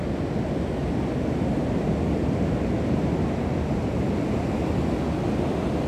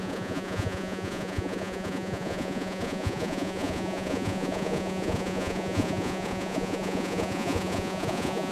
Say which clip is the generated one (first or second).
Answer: second